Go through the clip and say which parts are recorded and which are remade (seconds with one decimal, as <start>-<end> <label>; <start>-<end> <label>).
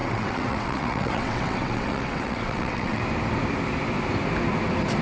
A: 0.0-3.0 remade; 3.0-5.0 recorded